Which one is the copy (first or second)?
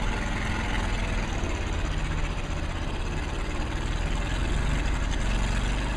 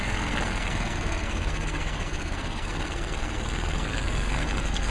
second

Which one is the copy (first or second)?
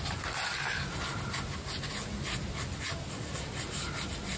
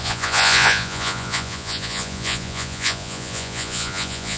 second